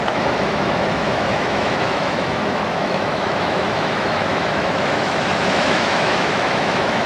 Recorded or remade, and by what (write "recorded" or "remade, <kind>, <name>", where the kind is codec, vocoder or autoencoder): remade, autoencoder, DAC-VAE